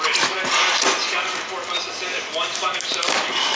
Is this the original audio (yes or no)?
yes